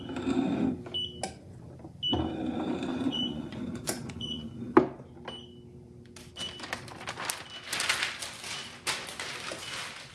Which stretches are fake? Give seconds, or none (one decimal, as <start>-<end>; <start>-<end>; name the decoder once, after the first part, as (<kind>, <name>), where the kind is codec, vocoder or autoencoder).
2.9-4.5 (vocoder, Vocos)